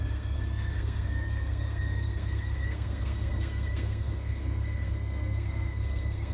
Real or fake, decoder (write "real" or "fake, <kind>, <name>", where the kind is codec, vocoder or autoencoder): fake, codec, SNAC